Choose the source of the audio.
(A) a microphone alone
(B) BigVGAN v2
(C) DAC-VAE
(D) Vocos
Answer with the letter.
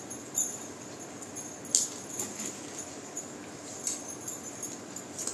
A